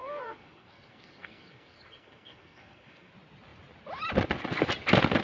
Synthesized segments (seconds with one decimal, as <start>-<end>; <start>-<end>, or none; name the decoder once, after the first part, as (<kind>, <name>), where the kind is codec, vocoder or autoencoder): 0.0-3.1 (codec, SNAC)